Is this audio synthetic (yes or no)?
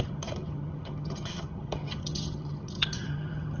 yes